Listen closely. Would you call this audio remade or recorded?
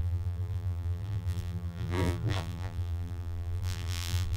remade